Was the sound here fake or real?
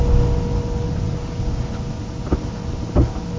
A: real